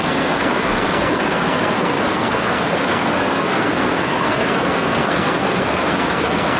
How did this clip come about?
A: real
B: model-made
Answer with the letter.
B